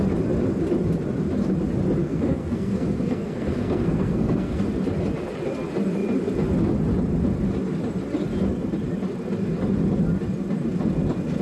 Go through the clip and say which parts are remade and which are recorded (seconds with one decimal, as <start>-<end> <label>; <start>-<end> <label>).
0.0-2.0 recorded; 2.0-4.6 remade; 4.6-11.4 recorded